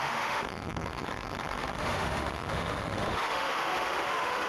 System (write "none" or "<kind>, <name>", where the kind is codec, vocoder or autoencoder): autoencoder, DAC-VAE